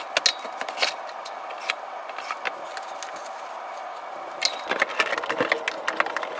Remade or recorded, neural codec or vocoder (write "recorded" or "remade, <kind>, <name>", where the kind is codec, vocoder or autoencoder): recorded